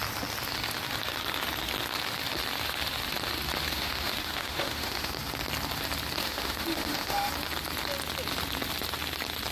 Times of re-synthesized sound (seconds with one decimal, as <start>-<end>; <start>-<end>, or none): 3.7-5.1; 6.2-7.3